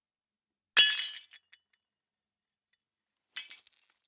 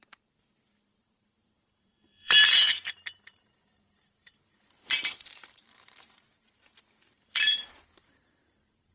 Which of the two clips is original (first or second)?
first